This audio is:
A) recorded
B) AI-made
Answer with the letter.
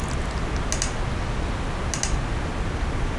A